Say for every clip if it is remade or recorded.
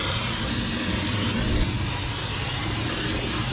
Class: recorded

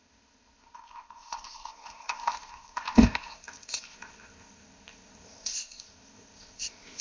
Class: remade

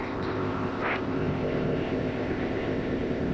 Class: remade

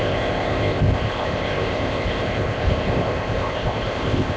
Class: remade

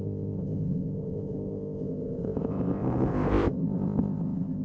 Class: remade